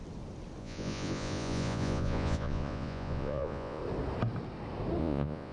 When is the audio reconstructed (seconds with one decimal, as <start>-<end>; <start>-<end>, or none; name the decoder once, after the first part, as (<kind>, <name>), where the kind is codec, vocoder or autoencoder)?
0.6-3.8 (vocoder, Vocos); 5.0-5.5